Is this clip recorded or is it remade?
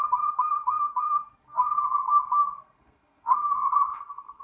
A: remade